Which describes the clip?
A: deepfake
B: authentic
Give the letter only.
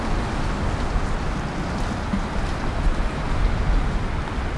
B